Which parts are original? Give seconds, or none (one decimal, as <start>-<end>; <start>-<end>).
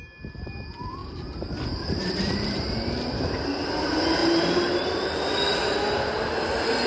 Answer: 0.0-1.0; 3.1-4.2; 5.3-6.9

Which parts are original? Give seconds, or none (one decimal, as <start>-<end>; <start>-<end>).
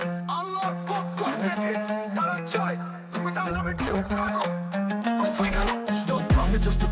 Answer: 0.0-3.5; 4.3-6.9